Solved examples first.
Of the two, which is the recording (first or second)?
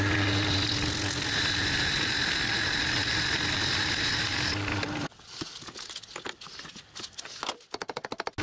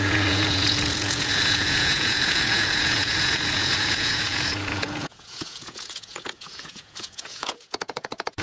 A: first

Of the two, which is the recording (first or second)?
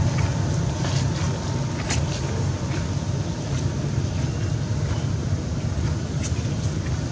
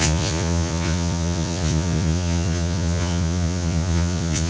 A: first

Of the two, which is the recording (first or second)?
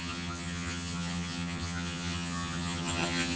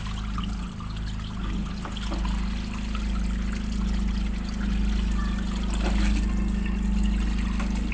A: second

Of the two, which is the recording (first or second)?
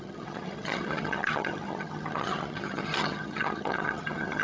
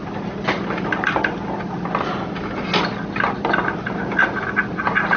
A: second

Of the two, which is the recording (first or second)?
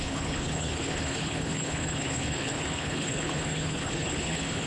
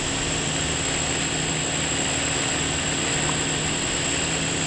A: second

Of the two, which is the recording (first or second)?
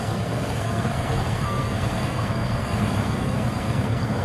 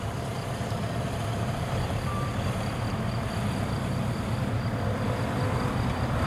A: second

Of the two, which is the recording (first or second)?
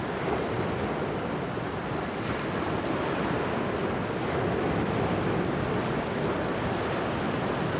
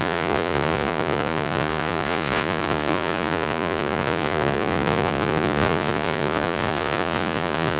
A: first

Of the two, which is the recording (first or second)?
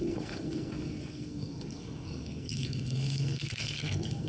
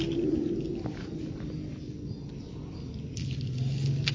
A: second